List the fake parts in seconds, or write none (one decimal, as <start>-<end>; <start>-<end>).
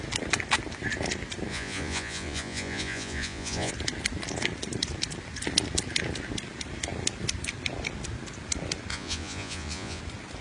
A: 1.5-3.7; 8.9-10.0